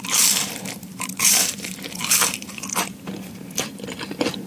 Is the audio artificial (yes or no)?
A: yes